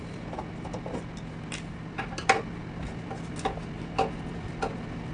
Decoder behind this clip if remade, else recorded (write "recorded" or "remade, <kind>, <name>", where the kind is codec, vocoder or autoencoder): recorded